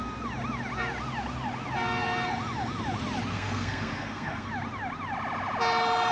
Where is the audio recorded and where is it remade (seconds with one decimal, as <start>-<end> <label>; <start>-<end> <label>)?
0.0-3.3 recorded; 3.3-4.5 remade; 4.5-6.1 recorded